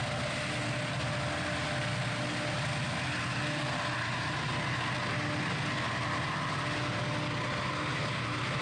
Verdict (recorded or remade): recorded